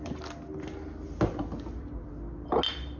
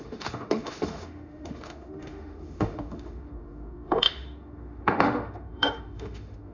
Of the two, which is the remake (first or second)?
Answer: second